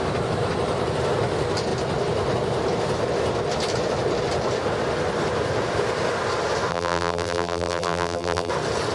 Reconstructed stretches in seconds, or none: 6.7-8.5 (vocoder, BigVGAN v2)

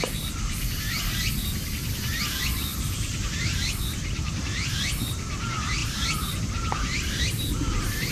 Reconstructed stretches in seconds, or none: 2.7-4.7 (vocoder, BigVGAN v2); 5.8-8.1

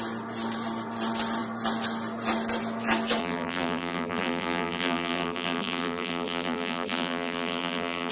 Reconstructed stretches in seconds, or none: 3.2-8.1 (vocoder, BigVGAN v2)